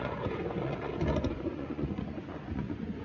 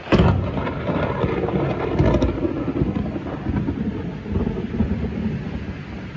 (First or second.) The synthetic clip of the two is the first